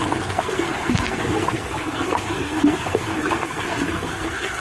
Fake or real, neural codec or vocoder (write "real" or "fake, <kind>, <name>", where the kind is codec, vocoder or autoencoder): fake, codec, SNAC